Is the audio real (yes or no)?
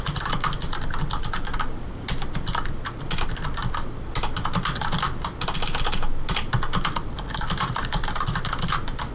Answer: yes